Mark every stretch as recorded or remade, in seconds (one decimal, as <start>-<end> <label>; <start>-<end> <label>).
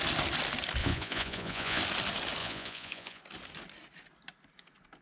0.0-0.8 recorded; 0.8-1.8 remade; 1.8-2.4 recorded; 2.4-3.2 remade; 3.2-5.0 recorded